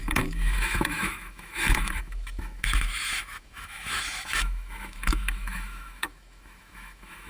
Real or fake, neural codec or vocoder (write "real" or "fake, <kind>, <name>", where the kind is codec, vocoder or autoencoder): fake, autoencoder, DAC-VAE